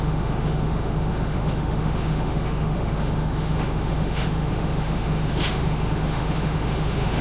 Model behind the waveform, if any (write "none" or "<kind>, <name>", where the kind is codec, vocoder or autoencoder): autoencoder, DAC-VAE